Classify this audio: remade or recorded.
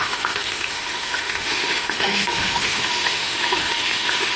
remade